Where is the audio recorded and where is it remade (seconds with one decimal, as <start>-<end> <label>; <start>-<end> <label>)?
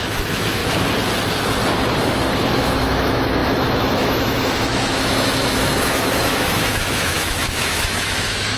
0.0-0.6 remade; 0.6-2.5 recorded; 2.5-8.6 remade